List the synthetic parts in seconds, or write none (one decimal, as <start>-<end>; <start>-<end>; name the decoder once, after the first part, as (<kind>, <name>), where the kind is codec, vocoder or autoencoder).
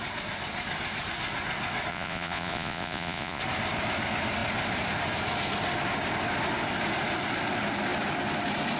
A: 1.9-3.4 (vocoder, Vocos)